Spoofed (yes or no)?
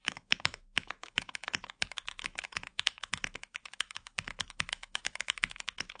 yes